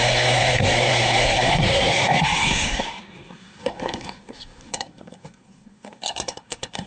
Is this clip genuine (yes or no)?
no